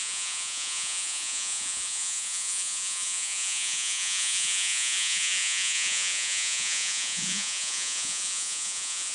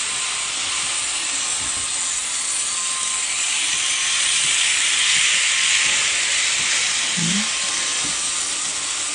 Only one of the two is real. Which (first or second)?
second